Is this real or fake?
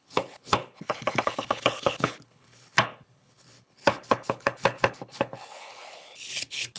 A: fake